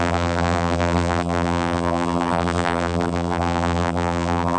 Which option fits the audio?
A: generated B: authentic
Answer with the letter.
A